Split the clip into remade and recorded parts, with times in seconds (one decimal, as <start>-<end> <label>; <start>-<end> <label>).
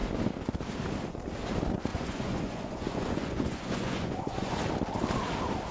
0.0-1.9 recorded; 1.9-4.6 remade; 4.6-5.7 recorded